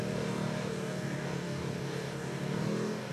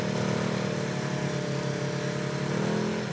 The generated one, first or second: first